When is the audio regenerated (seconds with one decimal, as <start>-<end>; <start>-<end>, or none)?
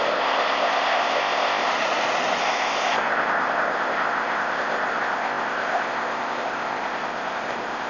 0.0-1.7; 2.4-7.9